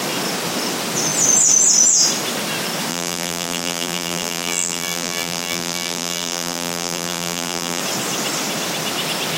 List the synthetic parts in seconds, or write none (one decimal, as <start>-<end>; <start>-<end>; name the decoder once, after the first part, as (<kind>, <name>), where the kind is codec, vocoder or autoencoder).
2.9-7.8 (vocoder, BigVGAN v2)